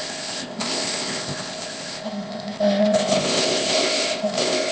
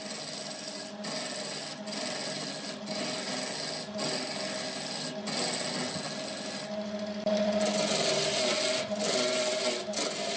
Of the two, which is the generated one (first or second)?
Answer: first